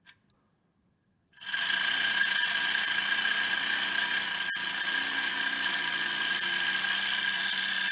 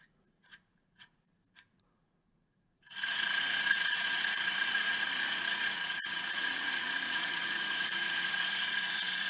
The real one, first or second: first